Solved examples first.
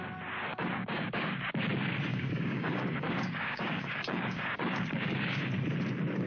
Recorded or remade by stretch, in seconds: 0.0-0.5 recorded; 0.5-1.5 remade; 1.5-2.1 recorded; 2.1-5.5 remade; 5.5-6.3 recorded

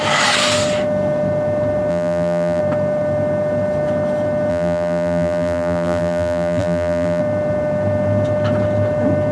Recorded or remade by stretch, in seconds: 0.0-1.9 recorded; 1.9-2.6 remade; 2.6-4.5 recorded; 4.5-7.2 remade; 7.2-9.3 recorded

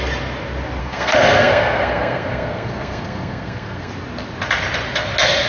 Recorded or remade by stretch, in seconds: 0.0-0.8 recorded; 0.8-3.9 remade; 3.9-5.5 recorded